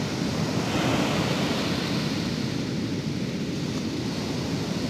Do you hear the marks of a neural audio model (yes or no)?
no